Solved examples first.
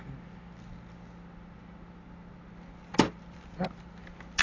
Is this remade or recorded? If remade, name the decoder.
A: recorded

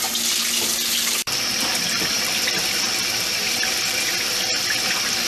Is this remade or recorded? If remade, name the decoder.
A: remade, vocoder, BigVGAN v2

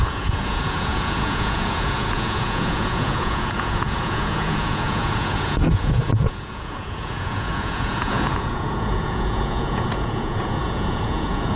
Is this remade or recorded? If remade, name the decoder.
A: remade, vocoder, Vocos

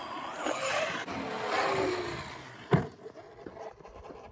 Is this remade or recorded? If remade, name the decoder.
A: recorded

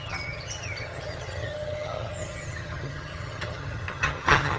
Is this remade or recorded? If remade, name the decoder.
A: remade, vocoder, HiFi-GAN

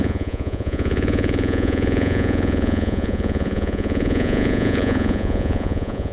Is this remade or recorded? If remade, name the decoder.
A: remade, vocoder, Vocos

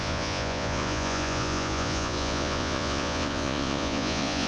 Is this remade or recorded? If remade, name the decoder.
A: remade, vocoder, Vocos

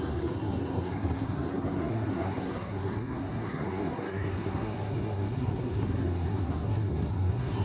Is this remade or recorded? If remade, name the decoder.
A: remade, codec, SNAC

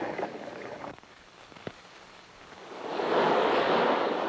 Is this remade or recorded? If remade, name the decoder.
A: remade, codec, DAC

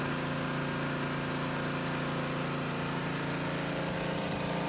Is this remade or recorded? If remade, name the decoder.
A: recorded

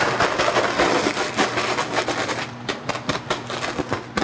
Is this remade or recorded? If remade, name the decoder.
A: recorded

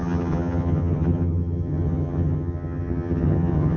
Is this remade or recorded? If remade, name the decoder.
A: remade, vocoder, HiFi-GAN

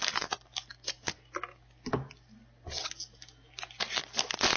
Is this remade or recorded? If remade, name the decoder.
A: recorded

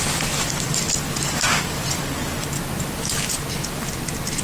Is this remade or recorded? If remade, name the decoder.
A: recorded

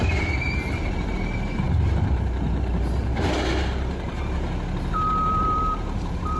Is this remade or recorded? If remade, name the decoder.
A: remade, vocoder, BigVGAN v2